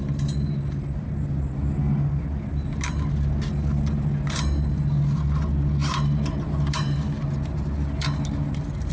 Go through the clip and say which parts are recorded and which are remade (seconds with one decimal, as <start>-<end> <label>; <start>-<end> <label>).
0.0-8.9 recorded